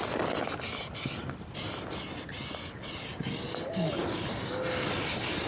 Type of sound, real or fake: real